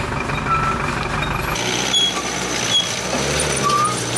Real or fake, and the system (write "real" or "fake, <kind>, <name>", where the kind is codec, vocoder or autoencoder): real